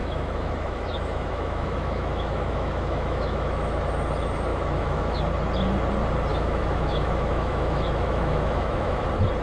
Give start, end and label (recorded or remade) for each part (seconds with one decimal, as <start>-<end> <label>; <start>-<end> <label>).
0.0-3.9 remade; 3.9-4.5 recorded; 4.5-5.2 remade; 5.2-6.3 recorded; 6.3-9.0 remade; 9.0-9.4 recorded